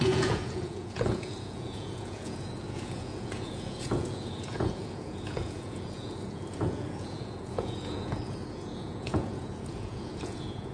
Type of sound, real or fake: fake